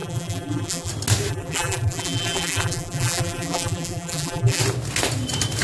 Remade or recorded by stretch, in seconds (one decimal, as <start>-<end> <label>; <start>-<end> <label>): 0.0-0.9 remade; 0.9-1.3 recorded; 1.3-4.6 remade; 4.6-5.6 recorded